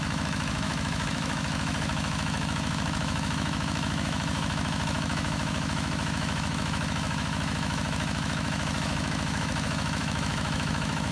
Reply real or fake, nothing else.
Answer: fake